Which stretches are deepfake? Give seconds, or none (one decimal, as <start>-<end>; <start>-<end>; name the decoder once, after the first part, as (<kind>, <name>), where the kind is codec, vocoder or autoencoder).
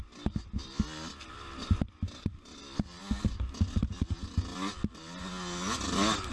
none